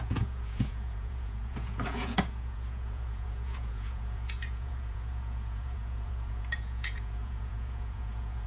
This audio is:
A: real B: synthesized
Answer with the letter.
B